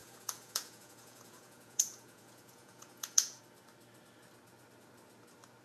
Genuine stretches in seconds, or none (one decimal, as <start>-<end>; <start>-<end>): 3.4-5.6